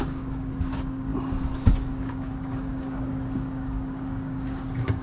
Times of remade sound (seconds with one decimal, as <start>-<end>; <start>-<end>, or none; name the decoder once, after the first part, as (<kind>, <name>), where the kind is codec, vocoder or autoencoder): 0.0-1.1 (codec, DAC); 1.9-5.0